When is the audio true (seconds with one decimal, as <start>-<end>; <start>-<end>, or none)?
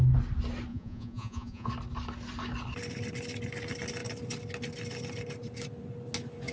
0.0-0.7; 1.7-6.5